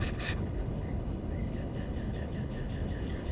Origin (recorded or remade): remade